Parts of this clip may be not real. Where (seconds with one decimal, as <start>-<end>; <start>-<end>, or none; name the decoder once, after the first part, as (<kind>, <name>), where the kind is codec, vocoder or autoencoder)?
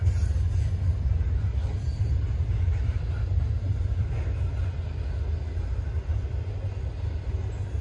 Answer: none